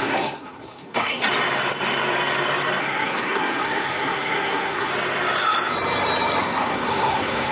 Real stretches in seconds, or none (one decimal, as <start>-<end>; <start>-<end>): 1.2-2.8; 4.9-6.4